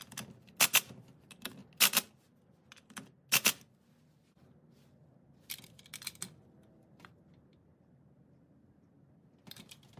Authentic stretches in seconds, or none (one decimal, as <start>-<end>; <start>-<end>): 0.0-10.0